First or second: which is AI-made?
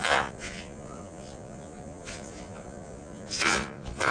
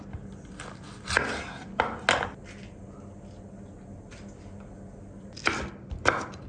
first